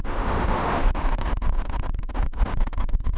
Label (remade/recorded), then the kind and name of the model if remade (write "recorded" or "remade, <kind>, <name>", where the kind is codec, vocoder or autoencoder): remade, autoencoder, DAC-VAE